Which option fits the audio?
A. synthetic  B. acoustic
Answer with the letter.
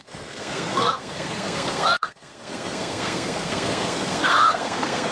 A